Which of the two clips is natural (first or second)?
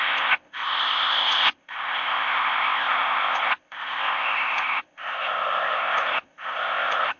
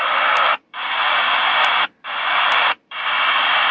second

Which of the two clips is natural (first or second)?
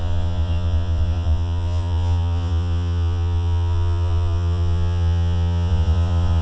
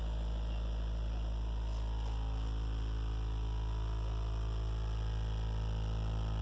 second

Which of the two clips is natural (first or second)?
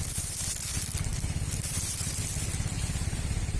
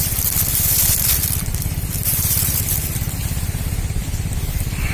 first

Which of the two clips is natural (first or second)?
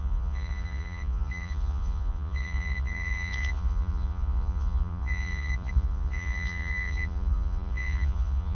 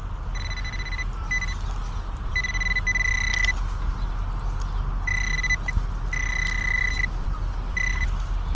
second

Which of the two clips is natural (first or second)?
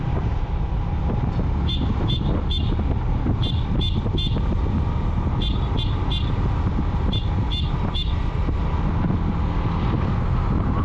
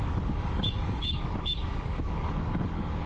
first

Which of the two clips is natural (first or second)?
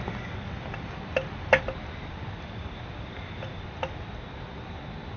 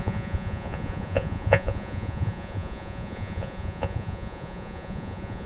first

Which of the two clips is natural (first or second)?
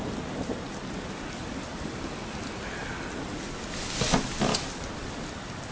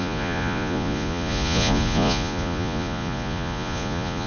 first